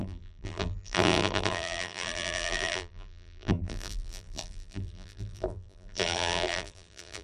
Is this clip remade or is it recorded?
remade